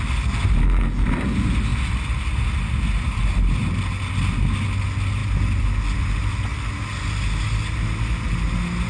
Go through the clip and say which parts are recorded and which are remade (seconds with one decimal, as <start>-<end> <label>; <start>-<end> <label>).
0.0-8.9 recorded